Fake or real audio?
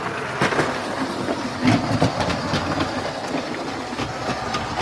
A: real